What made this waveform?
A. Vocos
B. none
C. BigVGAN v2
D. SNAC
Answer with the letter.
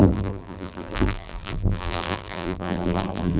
C